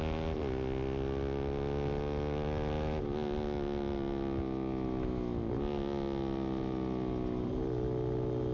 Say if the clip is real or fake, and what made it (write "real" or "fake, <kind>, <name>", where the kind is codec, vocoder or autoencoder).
real